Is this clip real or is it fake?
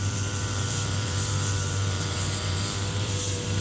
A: fake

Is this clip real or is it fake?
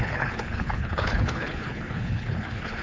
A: fake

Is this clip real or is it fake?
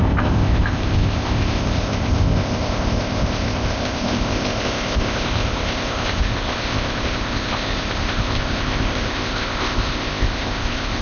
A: fake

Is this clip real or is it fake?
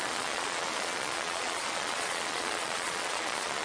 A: fake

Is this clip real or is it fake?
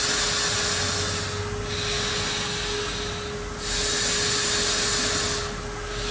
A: real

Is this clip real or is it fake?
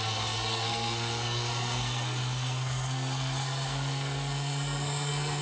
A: fake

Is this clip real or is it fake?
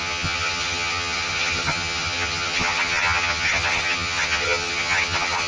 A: fake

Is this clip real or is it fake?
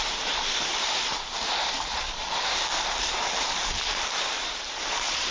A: fake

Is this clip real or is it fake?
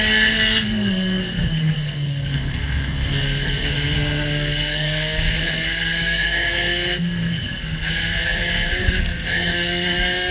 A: fake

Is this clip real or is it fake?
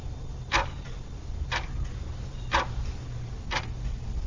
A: real